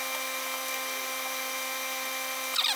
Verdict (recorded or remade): recorded